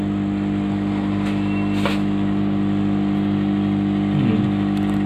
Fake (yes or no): no